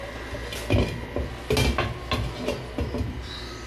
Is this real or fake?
real